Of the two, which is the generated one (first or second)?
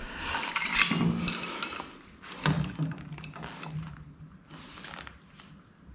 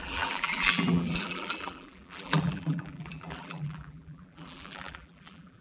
second